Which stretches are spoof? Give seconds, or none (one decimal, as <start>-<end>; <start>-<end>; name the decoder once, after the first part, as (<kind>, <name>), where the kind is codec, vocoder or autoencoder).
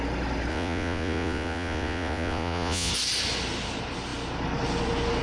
0.5-2.9 (vocoder, Vocos)